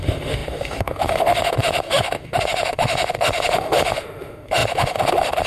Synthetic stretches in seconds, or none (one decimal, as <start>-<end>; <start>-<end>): 0.0-5.5